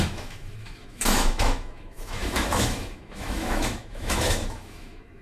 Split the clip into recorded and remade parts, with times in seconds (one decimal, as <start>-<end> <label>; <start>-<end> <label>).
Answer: 0.0-5.2 remade